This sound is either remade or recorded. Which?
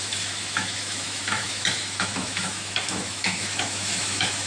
remade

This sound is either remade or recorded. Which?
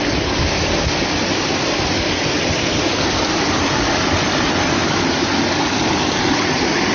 recorded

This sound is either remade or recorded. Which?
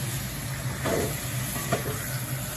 recorded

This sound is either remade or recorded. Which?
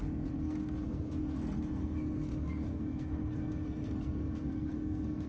remade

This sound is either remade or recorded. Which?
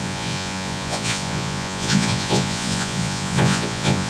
remade